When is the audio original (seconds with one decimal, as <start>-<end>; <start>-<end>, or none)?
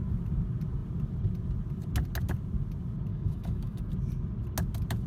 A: 0.0-3.1; 3.8-5.1